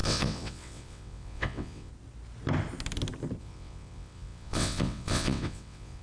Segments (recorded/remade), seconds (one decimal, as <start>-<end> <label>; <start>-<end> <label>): 0.0-1.9 remade; 1.9-3.4 recorded; 3.4-6.0 remade